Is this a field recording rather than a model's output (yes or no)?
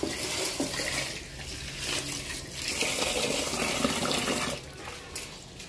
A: yes